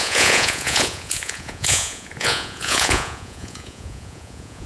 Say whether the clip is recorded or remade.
remade